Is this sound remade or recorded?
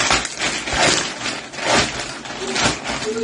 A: recorded